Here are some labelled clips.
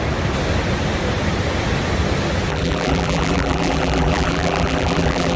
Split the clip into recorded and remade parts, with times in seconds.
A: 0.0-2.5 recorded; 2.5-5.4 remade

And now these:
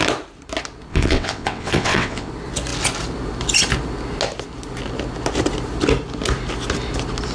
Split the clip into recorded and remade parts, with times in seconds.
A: 0.0-0.9 recorded; 0.9-2.3 remade; 2.3-7.3 recorded

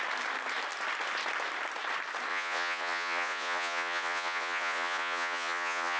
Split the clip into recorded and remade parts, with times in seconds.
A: 0.0-2.3 recorded; 2.3-6.0 remade

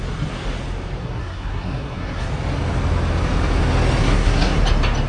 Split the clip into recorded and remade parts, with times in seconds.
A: 0.0-1.0 recorded; 1.0-2.3 remade; 2.3-4.0 recorded; 4.0-4.6 remade; 4.6-5.1 recorded

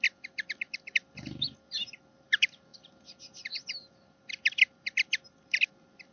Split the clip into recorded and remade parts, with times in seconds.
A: 0.0-6.1 recorded

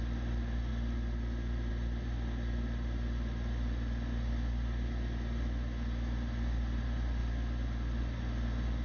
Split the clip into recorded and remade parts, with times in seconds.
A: 0.0-8.8 recorded